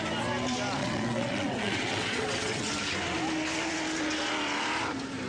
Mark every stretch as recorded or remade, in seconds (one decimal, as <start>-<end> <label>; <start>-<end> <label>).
0.0-0.8 recorded; 0.8-2.7 remade; 2.7-5.3 recorded